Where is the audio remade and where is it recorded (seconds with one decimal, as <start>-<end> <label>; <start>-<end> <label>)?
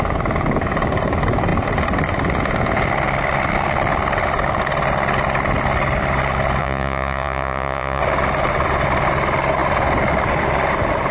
0.0-6.6 recorded; 6.6-8.0 remade; 8.0-11.1 recorded